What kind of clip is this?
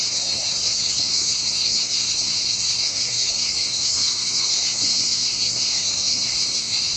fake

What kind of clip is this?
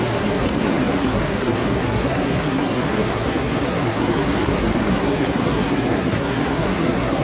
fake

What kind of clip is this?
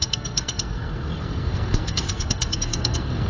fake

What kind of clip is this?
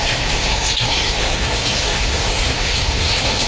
fake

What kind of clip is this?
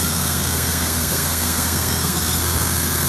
fake